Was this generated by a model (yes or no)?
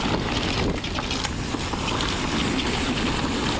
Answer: no